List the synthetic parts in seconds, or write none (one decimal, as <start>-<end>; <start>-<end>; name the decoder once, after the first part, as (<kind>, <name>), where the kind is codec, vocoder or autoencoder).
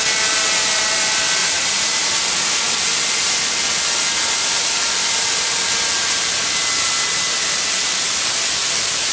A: 1.4-1.9 (vocoder, Vocos)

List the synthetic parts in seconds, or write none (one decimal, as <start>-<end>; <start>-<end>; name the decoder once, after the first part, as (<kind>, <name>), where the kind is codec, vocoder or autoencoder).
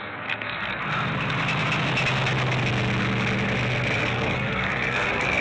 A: 0.0-0.8 (codec, SNAC); 4.0-5.4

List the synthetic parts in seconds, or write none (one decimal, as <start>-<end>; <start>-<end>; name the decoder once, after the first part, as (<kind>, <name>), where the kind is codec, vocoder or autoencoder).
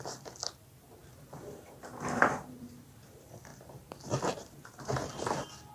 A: 1.0-2.8 (vocoder, BigVGAN v2); 3.5-5.2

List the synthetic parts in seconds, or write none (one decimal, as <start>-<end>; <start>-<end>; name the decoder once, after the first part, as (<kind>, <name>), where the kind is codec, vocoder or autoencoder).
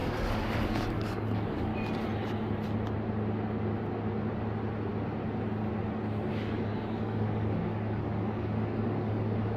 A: 0.0-1.7 (codec, DAC); 6.3-9.6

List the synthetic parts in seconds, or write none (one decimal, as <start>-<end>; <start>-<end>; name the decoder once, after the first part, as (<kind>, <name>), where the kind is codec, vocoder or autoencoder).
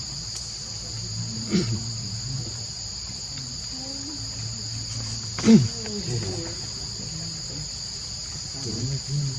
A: none